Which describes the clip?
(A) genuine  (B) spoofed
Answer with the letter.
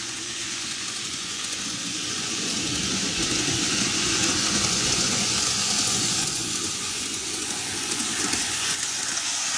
B